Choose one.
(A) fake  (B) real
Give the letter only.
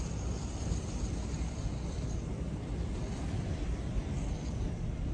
A